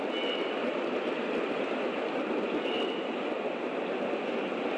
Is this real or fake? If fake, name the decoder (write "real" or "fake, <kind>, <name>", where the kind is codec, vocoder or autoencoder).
real